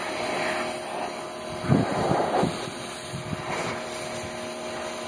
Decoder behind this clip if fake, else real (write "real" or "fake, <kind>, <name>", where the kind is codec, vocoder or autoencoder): real